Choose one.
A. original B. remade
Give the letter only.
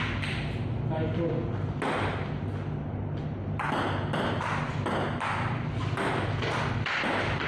A